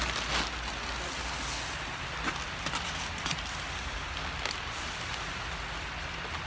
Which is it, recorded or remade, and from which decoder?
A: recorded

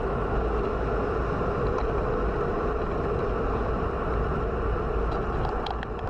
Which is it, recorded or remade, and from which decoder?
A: recorded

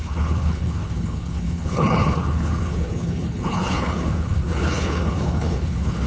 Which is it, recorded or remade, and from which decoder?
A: remade, codec, HILCodec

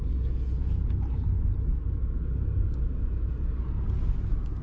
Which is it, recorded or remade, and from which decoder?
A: recorded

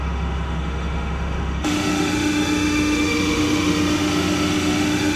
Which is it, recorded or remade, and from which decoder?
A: remade, autoencoder, DAC-VAE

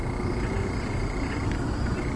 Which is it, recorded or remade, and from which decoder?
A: recorded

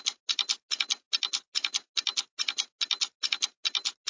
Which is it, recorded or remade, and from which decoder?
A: recorded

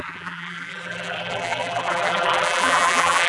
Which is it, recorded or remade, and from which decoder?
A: remade, vocoder, BigVGAN v2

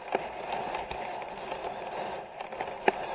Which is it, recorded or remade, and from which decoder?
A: recorded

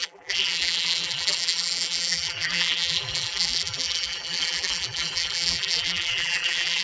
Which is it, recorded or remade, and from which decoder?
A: remade, vocoder, BigVGAN v2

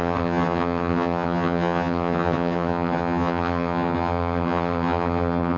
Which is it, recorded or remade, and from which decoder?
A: remade, vocoder, HiFi-GAN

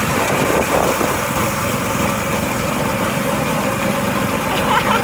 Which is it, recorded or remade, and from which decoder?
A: remade, vocoder, BigVGAN v2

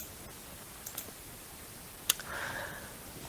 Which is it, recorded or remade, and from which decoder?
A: recorded